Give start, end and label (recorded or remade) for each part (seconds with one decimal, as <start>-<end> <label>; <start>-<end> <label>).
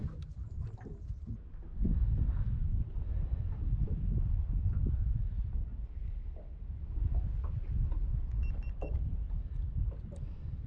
0.0-10.7 recorded